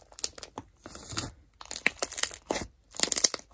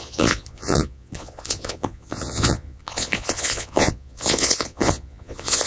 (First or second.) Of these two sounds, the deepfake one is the second